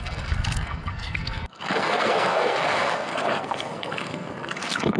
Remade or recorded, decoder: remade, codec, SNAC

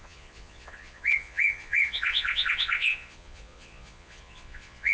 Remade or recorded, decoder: remade, vocoder, Vocos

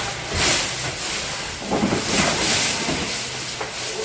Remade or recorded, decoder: recorded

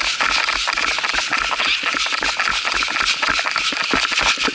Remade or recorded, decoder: recorded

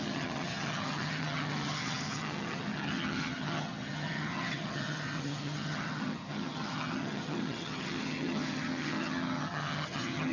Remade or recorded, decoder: remade, vocoder, HiFi-GAN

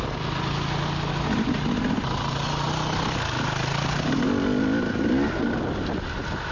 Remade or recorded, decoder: recorded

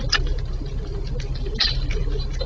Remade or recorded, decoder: recorded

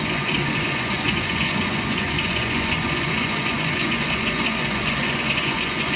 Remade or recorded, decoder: remade, vocoder, Vocos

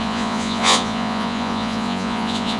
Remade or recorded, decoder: remade, vocoder, Vocos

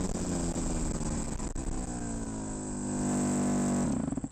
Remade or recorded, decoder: recorded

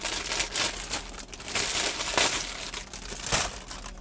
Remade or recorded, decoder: recorded